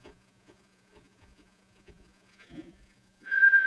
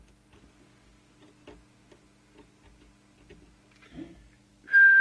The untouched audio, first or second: second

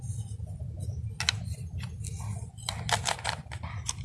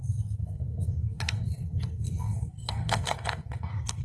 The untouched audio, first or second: first